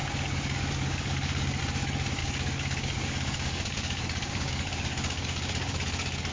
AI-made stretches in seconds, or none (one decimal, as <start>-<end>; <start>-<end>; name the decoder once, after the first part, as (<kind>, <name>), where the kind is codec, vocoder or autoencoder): 0.0-1.6 (codec, DAC); 2.2-6.3